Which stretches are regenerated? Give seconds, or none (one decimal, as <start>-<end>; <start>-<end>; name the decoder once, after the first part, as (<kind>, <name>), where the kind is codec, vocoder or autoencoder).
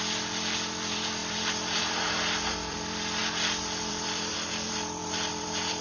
0.0-3.2 (vocoder, BigVGAN v2); 3.9-5.8